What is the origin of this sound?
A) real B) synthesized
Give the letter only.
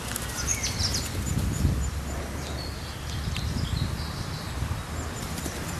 A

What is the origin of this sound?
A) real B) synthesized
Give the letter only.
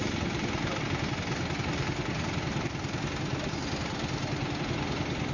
A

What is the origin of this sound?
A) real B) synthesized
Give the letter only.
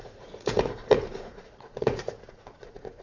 B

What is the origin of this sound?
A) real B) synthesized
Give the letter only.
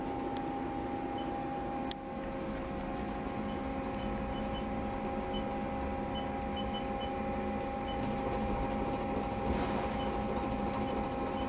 A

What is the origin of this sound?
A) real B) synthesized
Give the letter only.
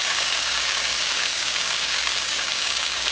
B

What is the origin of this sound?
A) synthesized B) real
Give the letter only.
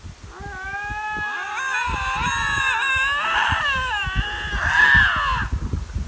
B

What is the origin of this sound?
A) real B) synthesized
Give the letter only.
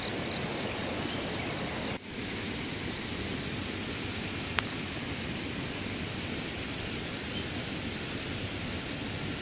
A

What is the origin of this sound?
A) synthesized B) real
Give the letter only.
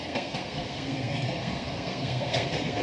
A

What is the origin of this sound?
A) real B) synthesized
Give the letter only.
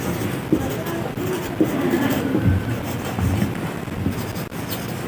A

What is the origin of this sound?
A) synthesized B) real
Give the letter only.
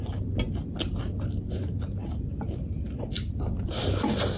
B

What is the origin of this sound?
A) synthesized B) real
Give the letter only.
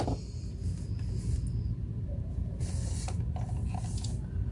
B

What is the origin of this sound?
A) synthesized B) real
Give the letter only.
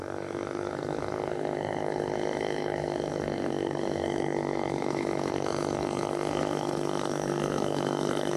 A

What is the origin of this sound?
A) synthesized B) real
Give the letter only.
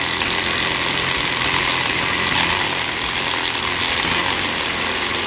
B